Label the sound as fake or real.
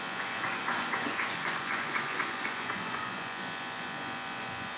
fake